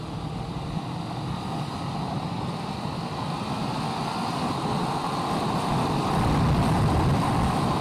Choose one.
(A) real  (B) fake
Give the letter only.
A